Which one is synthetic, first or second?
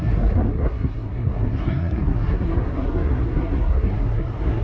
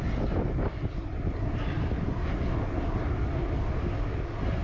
first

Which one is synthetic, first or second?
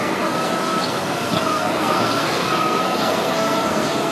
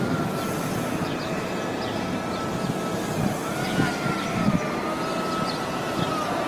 first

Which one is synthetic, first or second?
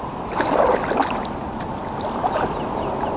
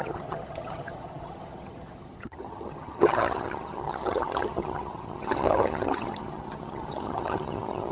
second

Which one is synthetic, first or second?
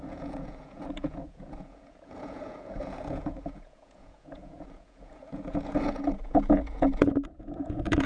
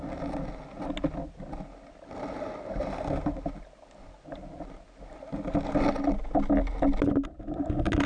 first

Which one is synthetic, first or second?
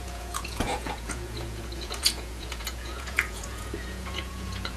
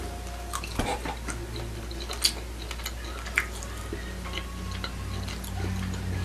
first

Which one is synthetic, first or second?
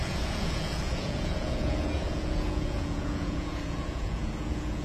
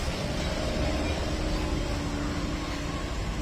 first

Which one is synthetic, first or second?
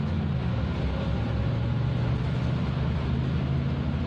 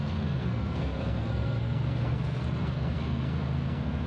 second